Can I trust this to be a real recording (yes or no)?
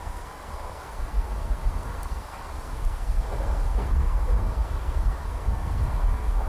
no